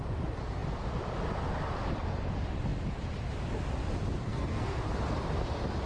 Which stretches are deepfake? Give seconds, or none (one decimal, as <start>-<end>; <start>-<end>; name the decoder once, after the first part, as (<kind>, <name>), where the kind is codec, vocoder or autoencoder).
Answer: 4.3-4.8 (codec, SNAC)